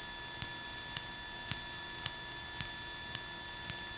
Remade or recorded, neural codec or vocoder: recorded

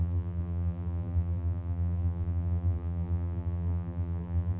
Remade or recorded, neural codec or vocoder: remade, vocoder, BigVGAN v2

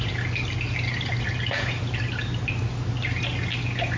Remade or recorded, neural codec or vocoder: recorded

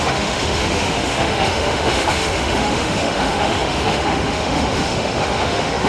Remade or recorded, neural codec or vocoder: remade, autoencoder, DAC-VAE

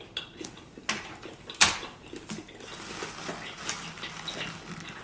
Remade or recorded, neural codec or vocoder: recorded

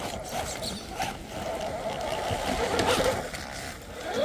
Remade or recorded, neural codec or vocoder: recorded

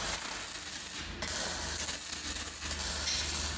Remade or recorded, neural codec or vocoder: recorded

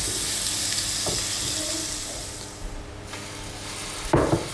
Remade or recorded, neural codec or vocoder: recorded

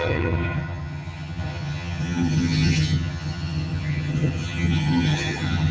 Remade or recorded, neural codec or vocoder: remade, vocoder, HiFi-GAN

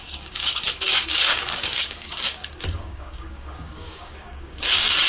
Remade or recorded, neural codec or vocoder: remade, codec, DAC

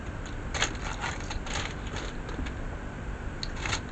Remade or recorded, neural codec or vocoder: recorded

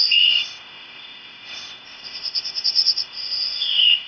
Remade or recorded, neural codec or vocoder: remade, codec, ZipCodec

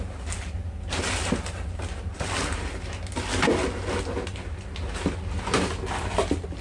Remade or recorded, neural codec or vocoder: recorded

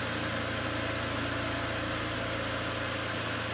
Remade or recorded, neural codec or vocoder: recorded